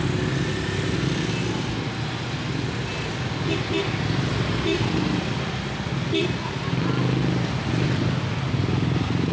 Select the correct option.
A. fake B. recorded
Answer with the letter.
B